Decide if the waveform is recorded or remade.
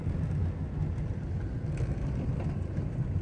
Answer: recorded